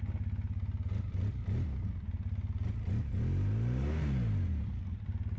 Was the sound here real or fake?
real